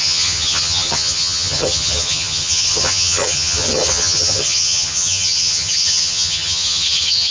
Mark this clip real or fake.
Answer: fake